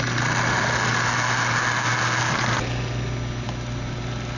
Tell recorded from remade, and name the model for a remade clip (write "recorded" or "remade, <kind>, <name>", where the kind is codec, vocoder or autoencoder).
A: recorded